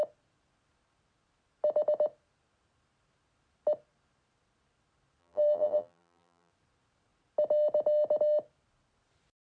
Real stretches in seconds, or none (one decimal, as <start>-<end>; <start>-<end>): 0.0-5.2; 6.5-9.6